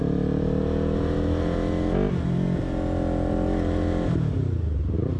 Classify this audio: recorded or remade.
recorded